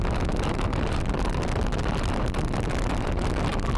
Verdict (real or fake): real